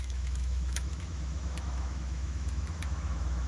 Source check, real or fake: fake